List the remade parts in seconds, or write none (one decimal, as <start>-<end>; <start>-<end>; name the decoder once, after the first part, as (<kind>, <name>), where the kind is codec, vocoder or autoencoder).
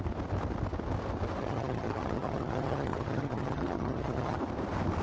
1.4-4.4 (vocoder, HiFi-GAN)